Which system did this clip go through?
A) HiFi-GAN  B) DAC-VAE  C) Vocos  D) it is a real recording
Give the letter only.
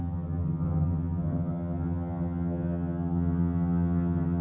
A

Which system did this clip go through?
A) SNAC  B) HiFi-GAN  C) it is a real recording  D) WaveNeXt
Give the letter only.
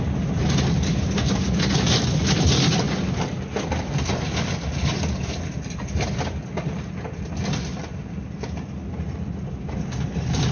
C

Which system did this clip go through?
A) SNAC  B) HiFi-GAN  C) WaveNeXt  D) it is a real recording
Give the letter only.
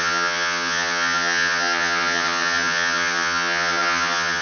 B